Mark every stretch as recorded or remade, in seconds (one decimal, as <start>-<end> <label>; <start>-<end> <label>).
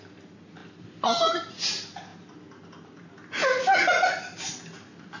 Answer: 0.0-5.2 recorded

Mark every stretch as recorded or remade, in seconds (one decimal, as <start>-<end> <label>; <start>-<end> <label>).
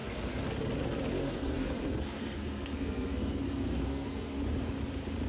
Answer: 0.0-0.5 remade; 0.5-1.2 recorded; 1.2-4.4 remade; 4.4-5.3 recorded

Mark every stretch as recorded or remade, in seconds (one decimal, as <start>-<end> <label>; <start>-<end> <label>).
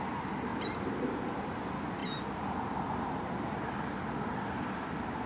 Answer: 0.0-0.5 remade; 0.5-1.3 recorded; 1.3-5.3 remade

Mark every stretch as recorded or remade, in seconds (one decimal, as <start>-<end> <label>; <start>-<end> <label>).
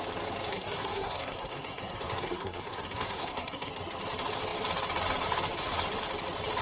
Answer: 0.0-0.5 recorded; 0.5-3.7 remade; 3.7-6.6 recorded